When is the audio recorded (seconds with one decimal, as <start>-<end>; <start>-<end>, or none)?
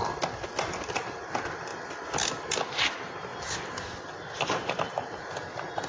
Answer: 0.0-5.9